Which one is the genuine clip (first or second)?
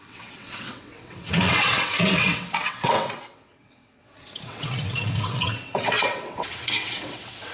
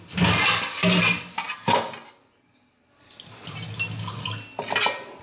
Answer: second